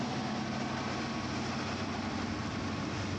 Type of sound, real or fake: real